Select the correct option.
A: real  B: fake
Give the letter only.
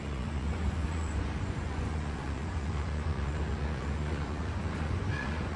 B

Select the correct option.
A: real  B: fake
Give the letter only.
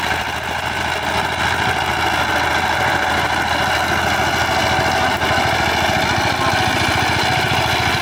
A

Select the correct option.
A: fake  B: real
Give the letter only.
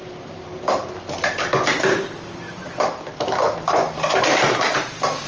B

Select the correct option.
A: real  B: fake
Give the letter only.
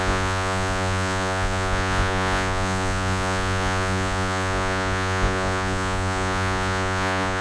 B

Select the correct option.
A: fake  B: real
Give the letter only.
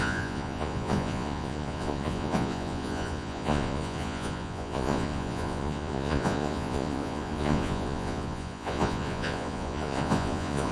A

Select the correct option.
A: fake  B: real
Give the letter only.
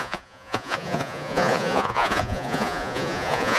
A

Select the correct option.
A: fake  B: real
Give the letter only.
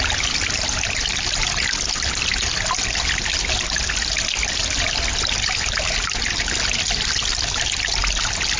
B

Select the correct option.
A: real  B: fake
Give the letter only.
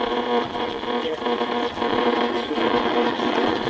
B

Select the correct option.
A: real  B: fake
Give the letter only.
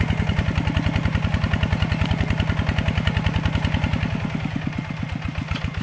A